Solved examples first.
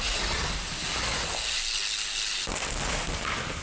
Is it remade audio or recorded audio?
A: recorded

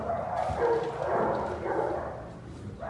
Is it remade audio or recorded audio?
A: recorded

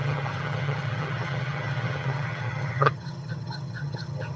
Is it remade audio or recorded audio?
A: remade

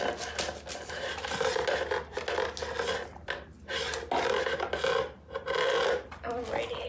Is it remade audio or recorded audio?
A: recorded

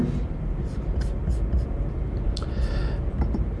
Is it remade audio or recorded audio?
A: recorded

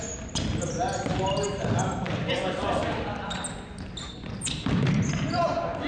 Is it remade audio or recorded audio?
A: recorded